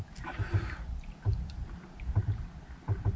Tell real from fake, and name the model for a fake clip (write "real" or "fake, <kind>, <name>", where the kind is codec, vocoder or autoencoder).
real